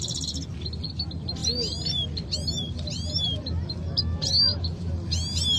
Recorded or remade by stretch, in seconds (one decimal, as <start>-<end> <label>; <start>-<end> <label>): 0.0-5.6 recorded